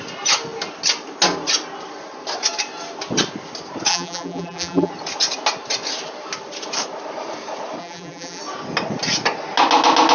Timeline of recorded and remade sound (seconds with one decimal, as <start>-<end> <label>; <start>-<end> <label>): 0.0-3.9 recorded; 3.9-4.9 remade; 4.9-7.8 recorded; 7.8-8.4 remade; 8.4-10.1 recorded